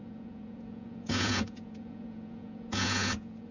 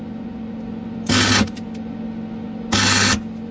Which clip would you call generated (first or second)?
first